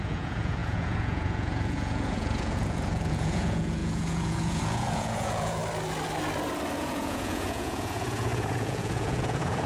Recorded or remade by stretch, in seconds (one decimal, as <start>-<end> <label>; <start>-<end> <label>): 0.0-5.6 remade; 5.6-6.8 recorded; 6.8-9.7 remade